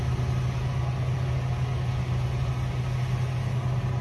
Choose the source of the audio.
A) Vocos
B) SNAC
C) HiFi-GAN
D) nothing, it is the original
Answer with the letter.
D